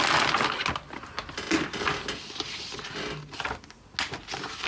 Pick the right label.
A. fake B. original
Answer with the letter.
B